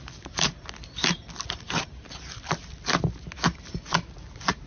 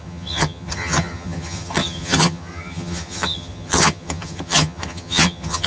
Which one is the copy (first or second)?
second